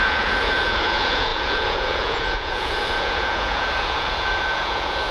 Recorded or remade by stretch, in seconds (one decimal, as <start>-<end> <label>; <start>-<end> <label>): 0.0-5.1 remade